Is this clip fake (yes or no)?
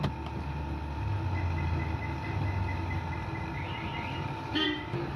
no